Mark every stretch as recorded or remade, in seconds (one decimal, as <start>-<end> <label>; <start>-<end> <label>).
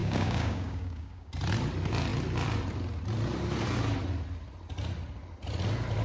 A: 0.0-1.3 remade; 1.3-6.0 recorded